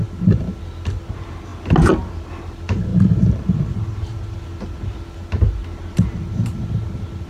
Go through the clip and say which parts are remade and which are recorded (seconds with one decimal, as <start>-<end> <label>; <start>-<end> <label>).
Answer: 0.0-7.3 recorded